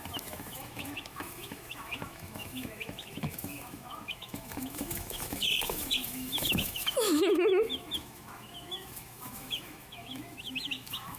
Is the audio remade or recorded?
remade